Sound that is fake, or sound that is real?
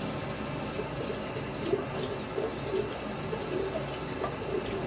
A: real